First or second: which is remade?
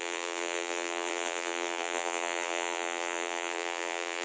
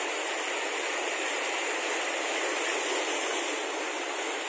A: first